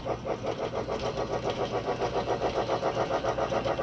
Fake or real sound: real